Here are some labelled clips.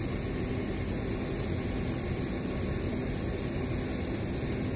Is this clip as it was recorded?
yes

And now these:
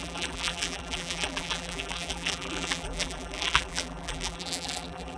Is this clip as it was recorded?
no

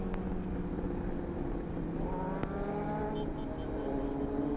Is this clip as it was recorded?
yes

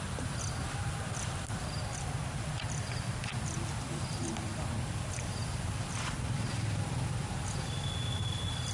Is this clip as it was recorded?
no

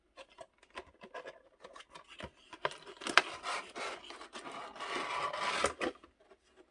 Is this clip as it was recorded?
yes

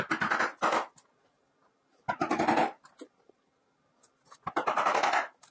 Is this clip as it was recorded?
yes